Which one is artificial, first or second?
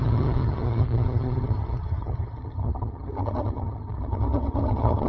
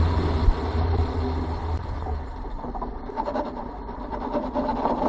first